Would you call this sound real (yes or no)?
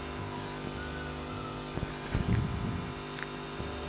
yes